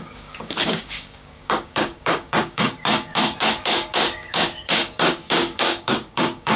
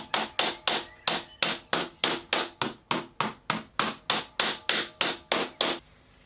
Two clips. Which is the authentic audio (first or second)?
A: second